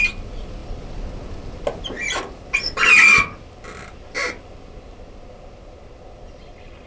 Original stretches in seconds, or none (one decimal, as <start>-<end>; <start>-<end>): 0.0-6.9

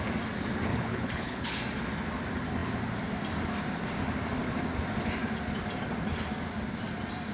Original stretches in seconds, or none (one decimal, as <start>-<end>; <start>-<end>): 0.0-0.7; 1.6-7.3

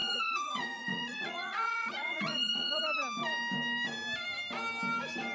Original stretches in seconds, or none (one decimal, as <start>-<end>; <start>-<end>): 2.8-5.3

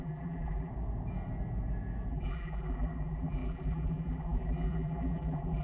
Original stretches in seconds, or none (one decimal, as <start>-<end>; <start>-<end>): 0.7-2.1